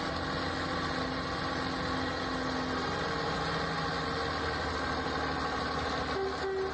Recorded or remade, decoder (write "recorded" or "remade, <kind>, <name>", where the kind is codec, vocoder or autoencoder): recorded